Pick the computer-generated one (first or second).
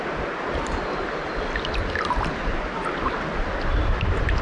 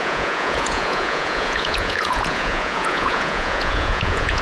second